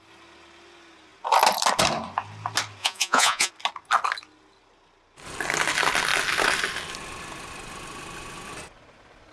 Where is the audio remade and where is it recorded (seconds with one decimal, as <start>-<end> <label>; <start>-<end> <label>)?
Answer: 0.0-2.8 recorded; 2.8-3.5 remade; 3.5-9.3 recorded